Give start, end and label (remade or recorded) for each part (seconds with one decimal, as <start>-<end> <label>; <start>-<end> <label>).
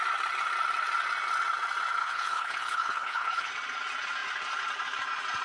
0.0-2.0 recorded; 2.0-3.5 remade; 3.5-5.4 recorded